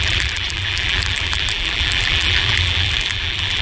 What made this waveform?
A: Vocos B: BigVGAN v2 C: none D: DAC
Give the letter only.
B